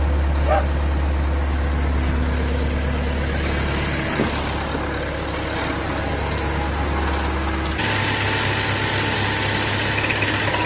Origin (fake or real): real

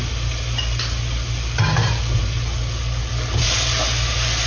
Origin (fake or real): real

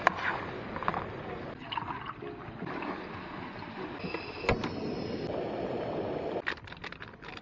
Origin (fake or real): real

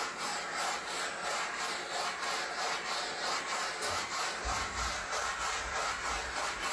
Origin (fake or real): fake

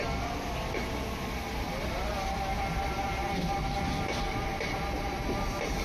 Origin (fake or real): real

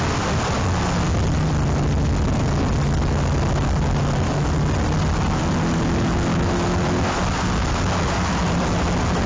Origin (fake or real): real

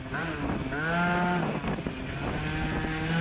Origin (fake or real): real